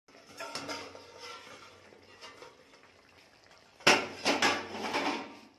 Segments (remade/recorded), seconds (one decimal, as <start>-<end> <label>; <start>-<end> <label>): 0.0-5.6 recorded